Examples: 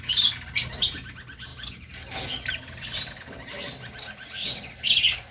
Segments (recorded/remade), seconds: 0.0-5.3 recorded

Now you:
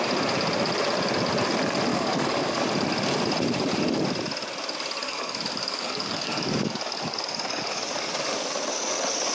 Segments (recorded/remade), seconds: 0.0-1.9 recorded; 1.9-2.6 remade; 2.6-5.0 recorded; 5.0-8.1 remade; 8.1-9.3 recorded

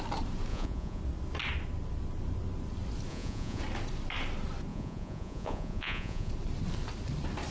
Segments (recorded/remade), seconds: 0.0-0.5 recorded; 0.5-1.0 remade; 1.0-3.1 recorded; 3.1-3.6 remade; 3.6-4.7 recorded; 4.7-6.3 remade; 6.3-7.5 recorded

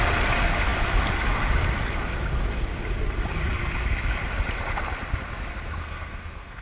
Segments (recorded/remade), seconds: 0.0-5.8 recorded; 5.8-6.6 remade

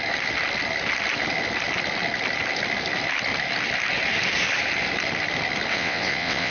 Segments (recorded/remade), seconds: 0.0-5.7 recorded; 5.7-6.5 remade

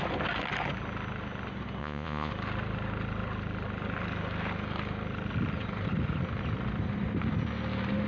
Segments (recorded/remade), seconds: 0.0-1.8 recorded; 1.8-2.3 remade; 2.3-8.1 recorded

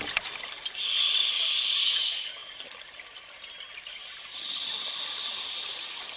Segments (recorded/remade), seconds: 0.0-6.2 recorded